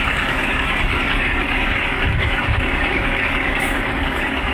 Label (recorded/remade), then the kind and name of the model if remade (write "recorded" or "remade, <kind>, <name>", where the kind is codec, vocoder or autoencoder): remade, codec, DAC